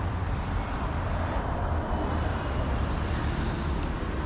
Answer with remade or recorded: remade